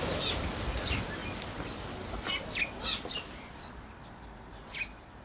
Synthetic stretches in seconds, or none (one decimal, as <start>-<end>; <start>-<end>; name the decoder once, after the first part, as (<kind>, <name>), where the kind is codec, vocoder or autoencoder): none